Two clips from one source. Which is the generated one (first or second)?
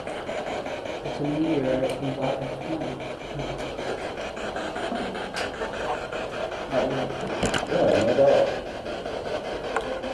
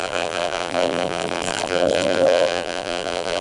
second